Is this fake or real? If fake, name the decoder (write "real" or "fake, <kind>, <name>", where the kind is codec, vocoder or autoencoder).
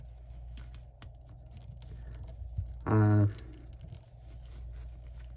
real